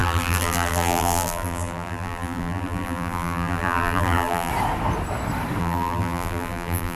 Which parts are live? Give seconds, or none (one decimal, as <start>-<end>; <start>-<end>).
4.5-5.6